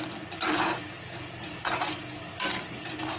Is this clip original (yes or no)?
yes